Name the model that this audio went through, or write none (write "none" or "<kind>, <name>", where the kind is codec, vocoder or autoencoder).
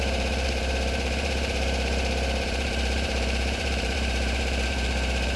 vocoder, BigVGAN v2